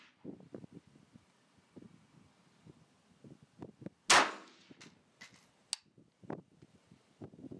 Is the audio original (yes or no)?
yes